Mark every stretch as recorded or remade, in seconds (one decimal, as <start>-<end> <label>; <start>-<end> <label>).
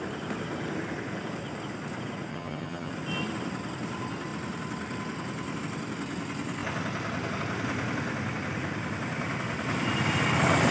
0.0-2.3 recorded; 2.3-2.9 remade; 2.9-10.7 recorded